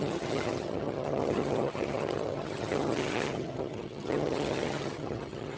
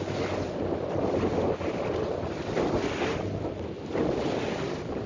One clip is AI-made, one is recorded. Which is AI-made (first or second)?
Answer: first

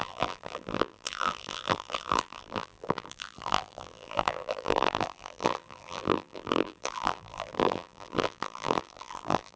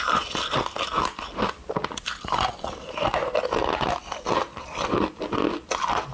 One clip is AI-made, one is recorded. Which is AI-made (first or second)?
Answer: first